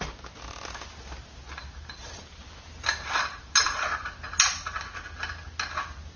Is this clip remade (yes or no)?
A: no